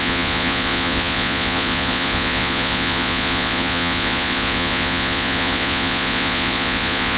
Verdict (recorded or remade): remade